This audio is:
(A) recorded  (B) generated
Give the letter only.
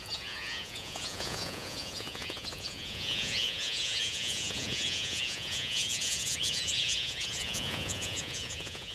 B